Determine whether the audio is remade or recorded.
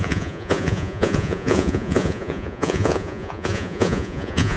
remade